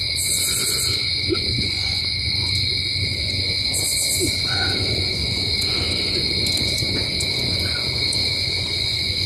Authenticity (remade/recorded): remade